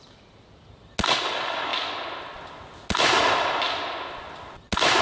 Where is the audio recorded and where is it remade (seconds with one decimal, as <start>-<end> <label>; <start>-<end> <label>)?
0.0-5.0 recorded